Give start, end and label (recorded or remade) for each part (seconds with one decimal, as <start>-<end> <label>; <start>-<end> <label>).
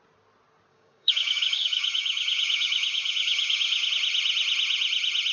0.0-0.7 recorded; 0.7-3.9 remade; 3.9-5.3 recorded